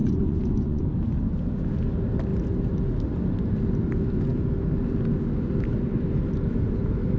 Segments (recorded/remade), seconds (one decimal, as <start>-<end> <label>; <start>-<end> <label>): 0.0-0.8 remade; 0.8-7.2 recorded